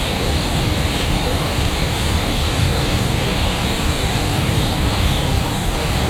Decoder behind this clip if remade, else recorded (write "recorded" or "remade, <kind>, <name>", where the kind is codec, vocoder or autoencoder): remade, codec, DAC